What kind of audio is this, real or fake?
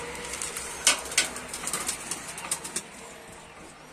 real